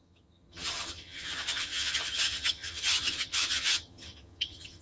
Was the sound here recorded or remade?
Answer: remade